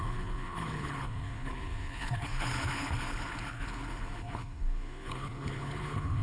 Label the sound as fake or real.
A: fake